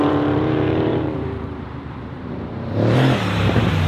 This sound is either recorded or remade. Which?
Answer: remade